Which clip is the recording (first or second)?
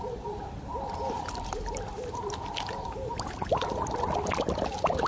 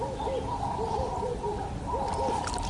second